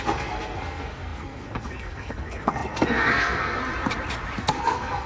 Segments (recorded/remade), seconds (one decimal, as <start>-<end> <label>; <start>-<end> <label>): 0.0-3.6 remade; 3.6-4.4 recorded; 4.4-5.1 remade